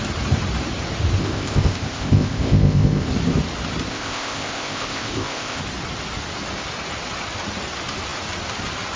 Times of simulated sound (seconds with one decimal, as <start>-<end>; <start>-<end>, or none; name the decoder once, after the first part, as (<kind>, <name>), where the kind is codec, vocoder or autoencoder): 1.2-3.1 (codec, ZipCodec); 3.9-5.6